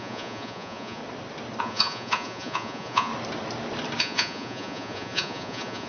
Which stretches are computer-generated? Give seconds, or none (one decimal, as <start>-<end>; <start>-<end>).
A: 0.0-1.0; 1.6-3.1; 4.0-5.9